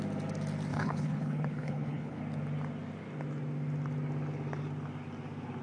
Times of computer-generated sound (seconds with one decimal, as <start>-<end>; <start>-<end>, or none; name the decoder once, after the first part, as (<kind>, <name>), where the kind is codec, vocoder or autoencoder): 0.7-2.2 (codec, HILCodec)